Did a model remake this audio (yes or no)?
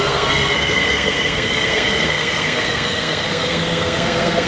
yes